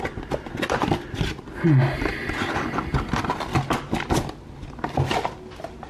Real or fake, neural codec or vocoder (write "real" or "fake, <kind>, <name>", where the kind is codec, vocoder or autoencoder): real